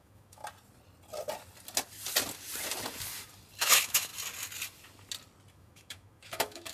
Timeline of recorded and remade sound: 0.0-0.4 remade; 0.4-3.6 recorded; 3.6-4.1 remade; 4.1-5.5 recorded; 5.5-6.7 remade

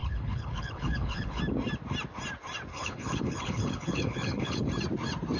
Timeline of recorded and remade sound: 0.0-1.4 remade; 1.4-2.7 recorded; 2.7-4.7 remade; 4.7-5.4 recorded

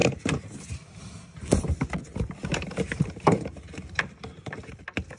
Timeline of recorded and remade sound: 0.0-1.0 remade; 1.0-2.5 recorded; 2.5-4.7 remade; 4.7-5.2 recorded

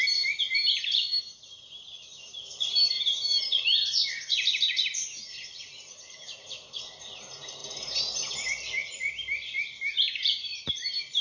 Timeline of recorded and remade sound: 0.0-2.1 remade; 2.1-2.9 recorded; 2.9-11.2 remade

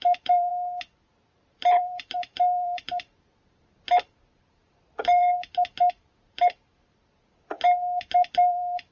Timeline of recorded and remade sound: 0.0-0.5 remade; 0.5-1.1 recorded; 1.1-3.3 remade; 3.3-4.5 recorded; 4.5-5.2 remade; 5.2-5.9 recorded; 5.9-6.7 remade; 6.7-8.3 recorded; 8.3-8.9 remade